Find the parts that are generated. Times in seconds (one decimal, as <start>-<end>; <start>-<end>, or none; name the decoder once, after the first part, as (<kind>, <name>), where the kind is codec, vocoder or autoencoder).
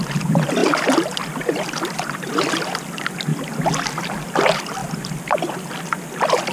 0.6-1.2 (vocoder, BigVGAN v2)